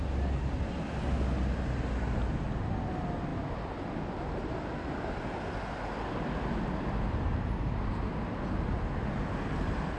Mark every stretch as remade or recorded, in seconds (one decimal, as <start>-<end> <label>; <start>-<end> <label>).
0.0-10.0 recorded